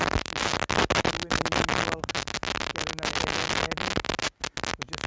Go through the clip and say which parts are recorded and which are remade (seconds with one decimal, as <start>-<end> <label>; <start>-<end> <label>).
0.0-5.1 recorded